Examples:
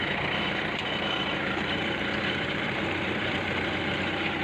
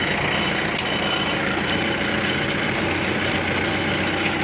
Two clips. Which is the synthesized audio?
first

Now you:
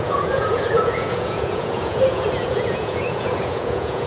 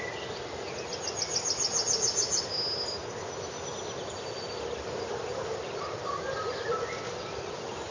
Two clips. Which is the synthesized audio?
first